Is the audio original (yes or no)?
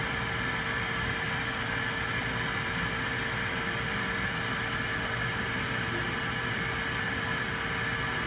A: yes